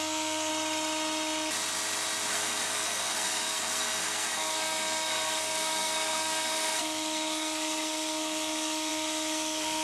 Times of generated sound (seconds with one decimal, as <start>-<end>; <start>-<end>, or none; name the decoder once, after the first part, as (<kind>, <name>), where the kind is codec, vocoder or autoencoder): 0.0-0.5 (codec, SNAC); 2.3-9.8